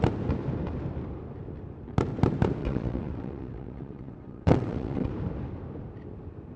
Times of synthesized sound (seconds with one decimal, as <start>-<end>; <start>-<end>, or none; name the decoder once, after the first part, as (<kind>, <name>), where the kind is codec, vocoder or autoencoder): 2.6-5.1 (vocoder, WaveNeXt)